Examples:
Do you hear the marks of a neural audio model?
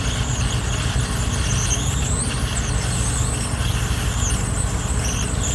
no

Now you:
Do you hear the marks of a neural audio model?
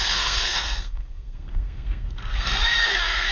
yes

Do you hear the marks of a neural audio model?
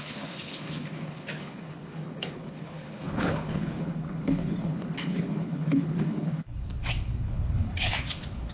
yes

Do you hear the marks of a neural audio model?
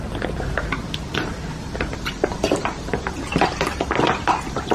no